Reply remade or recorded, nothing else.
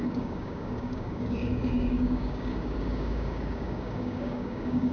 remade